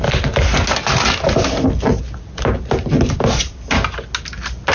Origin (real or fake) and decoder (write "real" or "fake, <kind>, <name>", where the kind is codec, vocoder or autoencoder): real